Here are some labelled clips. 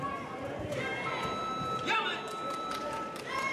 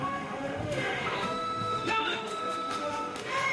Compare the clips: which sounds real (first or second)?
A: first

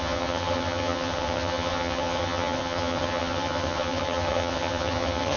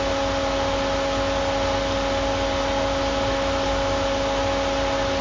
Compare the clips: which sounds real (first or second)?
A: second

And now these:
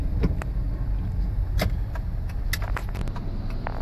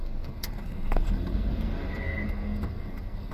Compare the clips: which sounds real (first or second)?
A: first